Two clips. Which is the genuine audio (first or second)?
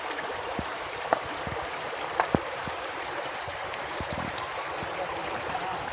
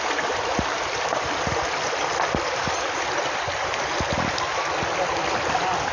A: second